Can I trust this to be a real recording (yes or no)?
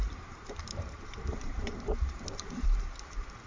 no